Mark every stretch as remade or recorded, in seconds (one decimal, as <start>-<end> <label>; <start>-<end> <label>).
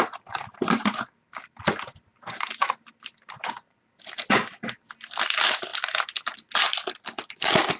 0.0-7.8 recorded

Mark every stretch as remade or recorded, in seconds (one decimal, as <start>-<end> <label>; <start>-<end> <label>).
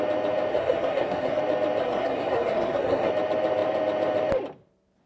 0.0-0.5 recorded; 0.5-1.4 remade; 1.4-1.8 recorded; 1.8-3.1 remade; 3.1-5.1 recorded